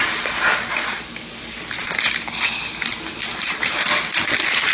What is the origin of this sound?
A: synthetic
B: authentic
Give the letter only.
B